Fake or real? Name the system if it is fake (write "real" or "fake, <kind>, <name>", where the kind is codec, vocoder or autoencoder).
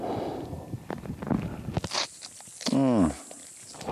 real